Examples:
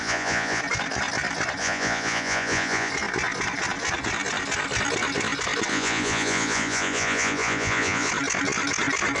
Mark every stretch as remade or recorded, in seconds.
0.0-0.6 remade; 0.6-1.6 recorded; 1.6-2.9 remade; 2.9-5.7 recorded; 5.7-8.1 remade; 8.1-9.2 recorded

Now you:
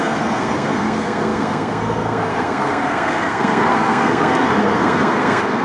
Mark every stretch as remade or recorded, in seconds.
0.0-5.6 remade

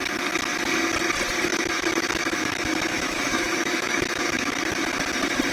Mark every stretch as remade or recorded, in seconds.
0.0-1.5 recorded; 1.5-4.8 remade; 4.8-5.5 recorded

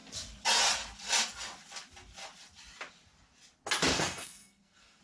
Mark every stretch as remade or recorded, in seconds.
0.0-3.9 recorded; 3.9-5.0 remade